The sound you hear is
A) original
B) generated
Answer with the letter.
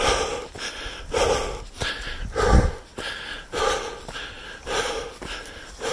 A